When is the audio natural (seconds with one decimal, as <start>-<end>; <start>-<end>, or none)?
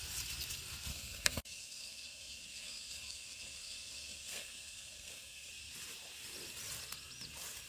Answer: 0.0-0.9; 5.5-7.7